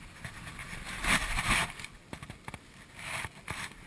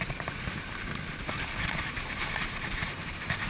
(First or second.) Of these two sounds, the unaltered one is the first